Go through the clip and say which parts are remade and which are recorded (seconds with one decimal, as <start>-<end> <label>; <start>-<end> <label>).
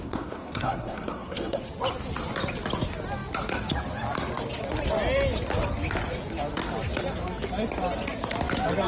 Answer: 0.0-1.6 remade; 1.6-8.9 recorded